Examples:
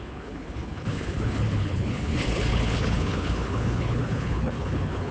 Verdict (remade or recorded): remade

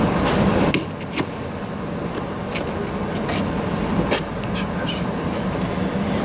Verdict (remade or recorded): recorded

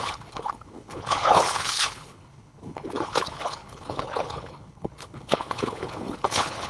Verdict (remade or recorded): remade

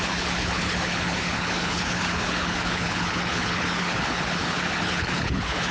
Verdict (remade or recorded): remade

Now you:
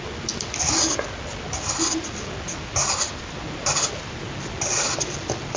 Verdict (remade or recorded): recorded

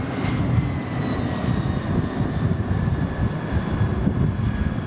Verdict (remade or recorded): recorded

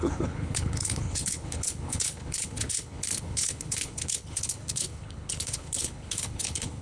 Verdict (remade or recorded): remade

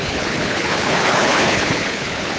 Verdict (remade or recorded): remade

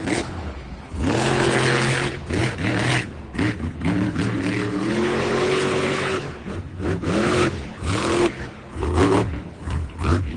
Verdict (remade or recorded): remade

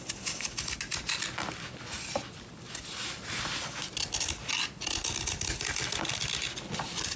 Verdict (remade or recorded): recorded